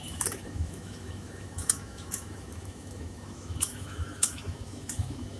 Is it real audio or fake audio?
fake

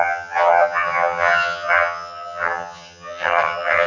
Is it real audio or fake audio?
fake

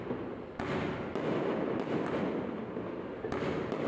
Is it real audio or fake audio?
real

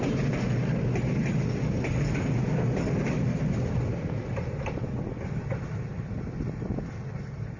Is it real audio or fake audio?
real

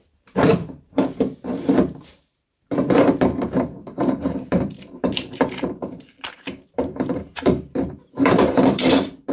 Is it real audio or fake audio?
fake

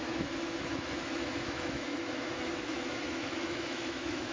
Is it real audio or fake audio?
fake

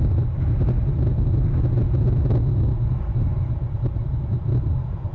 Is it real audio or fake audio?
real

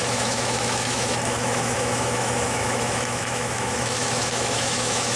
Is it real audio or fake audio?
fake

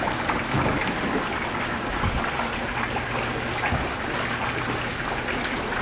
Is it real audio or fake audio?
real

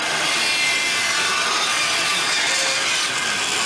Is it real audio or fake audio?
real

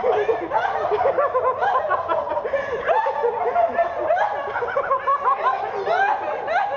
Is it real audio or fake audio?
real